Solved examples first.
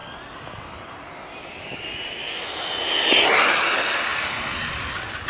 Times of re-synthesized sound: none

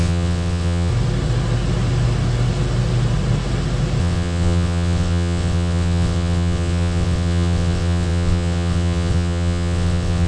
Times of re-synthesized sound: 0.0-0.9 (vocoder, WaveNeXt); 4.0-10.3

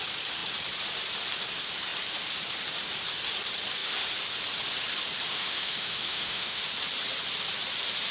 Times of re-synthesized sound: 5.3-6.6 (autoencoder, DAC-VAE)

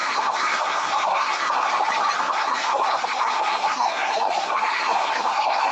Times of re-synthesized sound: 0.0-1.7 (codec, SNAC); 2.2-5.7

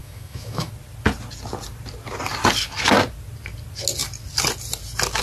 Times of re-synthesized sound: 0.0-0.7 (autoencoder, DAC-VAE)

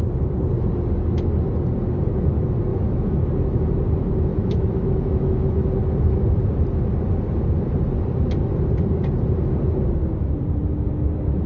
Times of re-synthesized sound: 2.7-3.7 (autoencoder, DAC-VAE); 4.3-5.7

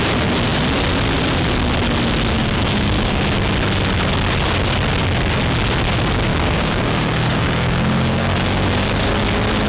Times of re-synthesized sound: 2.4-3.2 (codec, DAC); 6.3-9.1